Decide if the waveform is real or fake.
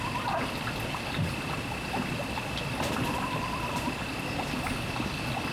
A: real